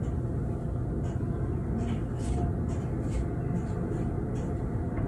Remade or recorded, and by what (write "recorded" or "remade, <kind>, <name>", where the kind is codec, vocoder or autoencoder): recorded